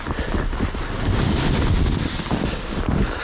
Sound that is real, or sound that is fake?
real